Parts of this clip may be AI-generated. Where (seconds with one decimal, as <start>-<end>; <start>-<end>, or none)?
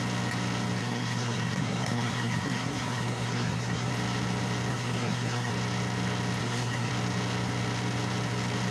0.8-3.9; 4.7-5.5; 6.4-6.9